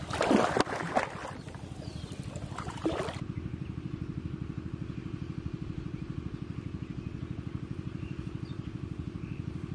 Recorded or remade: recorded